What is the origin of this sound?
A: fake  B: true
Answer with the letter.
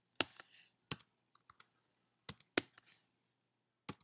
B